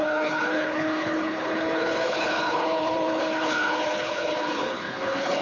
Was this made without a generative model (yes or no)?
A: no